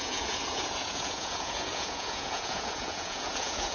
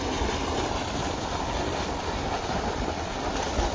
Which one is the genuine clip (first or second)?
second